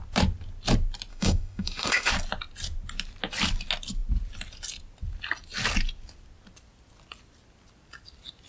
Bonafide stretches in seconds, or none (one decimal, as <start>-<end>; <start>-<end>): 0.0-1.1; 2.1-8.5